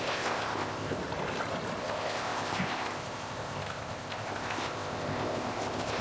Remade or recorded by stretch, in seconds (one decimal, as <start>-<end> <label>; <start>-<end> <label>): 0.0-1.0 remade; 1.0-1.8 recorded; 1.8-6.0 remade

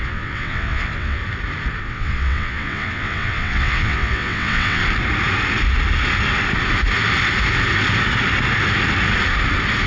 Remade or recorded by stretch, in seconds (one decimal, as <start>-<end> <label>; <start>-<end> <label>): 0.0-1.2 remade; 1.2-1.8 recorded; 1.8-4.8 remade; 4.8-9.9 recorded

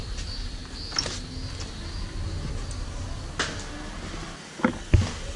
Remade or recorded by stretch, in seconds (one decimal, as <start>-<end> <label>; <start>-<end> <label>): 0.0-5.4 recorded

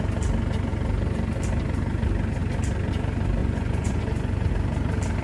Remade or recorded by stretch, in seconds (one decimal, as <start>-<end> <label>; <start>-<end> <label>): 0.0-3.4 recorded; 3.4-4.5 remade; 4.5-5.2 recorded

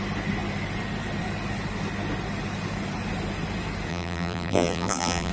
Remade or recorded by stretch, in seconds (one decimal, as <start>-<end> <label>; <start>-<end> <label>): 0.0-3.9 recorded; 3.9-5.3 remade